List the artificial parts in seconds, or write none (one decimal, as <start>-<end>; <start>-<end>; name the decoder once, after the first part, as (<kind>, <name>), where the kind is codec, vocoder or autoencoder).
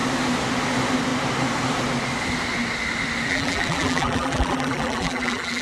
3.3-5.6 (vocoder, BigVGAN v2)